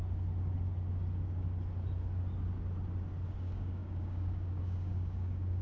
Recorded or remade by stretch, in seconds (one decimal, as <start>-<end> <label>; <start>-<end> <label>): 0.0-3.4 recorded; 3.4-5.6 remade